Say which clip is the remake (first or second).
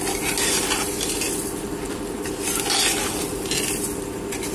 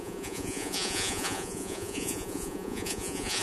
second